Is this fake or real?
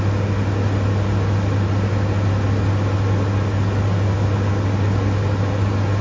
real